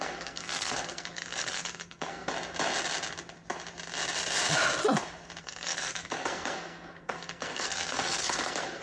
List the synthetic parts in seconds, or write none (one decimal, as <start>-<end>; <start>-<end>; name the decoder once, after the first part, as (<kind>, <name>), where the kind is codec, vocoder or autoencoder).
0.0-2.3 (codec, SNAC); 5.4-8.8